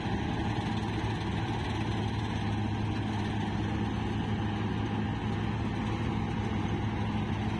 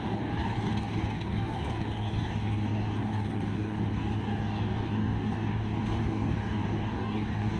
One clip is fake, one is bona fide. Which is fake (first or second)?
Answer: second